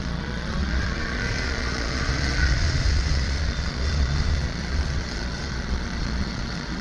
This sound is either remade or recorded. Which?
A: remade